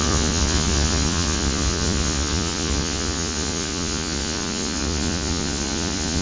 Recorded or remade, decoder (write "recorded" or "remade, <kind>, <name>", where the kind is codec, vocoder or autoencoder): remade, vocoder, Vocos